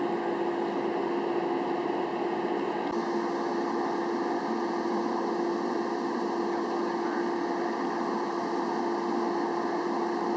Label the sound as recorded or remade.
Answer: recorded